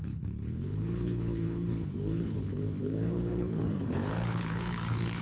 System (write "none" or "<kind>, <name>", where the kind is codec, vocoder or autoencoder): codec, HILCodec